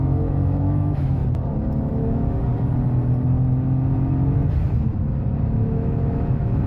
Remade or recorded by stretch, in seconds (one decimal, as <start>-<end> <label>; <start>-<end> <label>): 0.0-1.2 remade; 1.2-1.9 recorded; 1.9-2.5 remade; 2.5-5.4 recorded; 5.4-6.7 remade